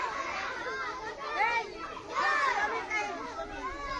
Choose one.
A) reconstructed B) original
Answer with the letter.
B